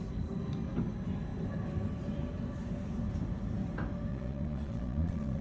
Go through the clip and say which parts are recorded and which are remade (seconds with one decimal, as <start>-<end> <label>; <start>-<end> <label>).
0.0-4.1 recorded; 4.1-5.4 remade